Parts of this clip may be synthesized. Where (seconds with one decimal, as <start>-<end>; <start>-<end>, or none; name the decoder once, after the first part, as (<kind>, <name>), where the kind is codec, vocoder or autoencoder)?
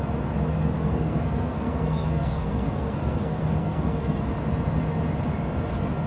0.5-4.2 (codec, SNAC)